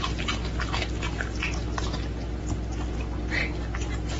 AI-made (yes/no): no